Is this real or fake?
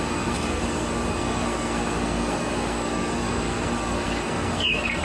fake